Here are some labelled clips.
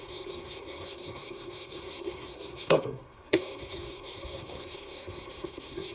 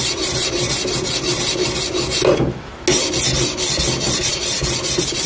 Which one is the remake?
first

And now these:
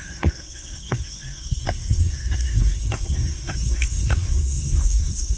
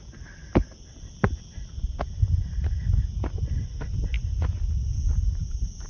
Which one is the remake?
first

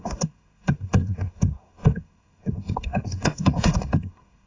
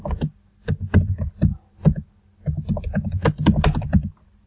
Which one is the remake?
first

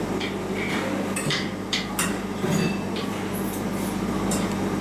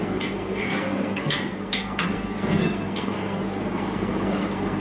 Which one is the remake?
second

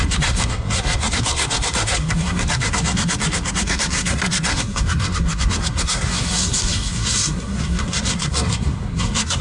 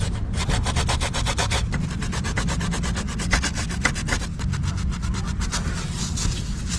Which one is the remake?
first